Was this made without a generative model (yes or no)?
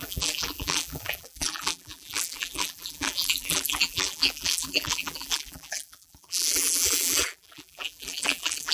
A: no